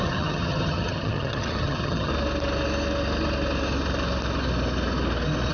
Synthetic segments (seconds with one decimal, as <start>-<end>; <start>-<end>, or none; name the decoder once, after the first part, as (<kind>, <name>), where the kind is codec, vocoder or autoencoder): 0.0-2.1 (vocoder, HiFi-GAN)